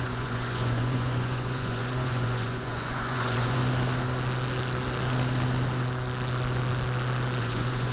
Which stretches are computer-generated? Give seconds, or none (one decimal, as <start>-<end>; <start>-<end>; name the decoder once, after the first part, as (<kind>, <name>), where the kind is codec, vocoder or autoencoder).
0.0-3.6 (vocoder, Vocos); 7.4-7.9